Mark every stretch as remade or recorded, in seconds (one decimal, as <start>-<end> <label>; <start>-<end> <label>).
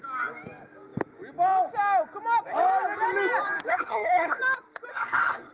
0.0-3.7 recorded; 3.7-4.4 remade; 4.4-4.9 recorded; 4.9-5.5 remade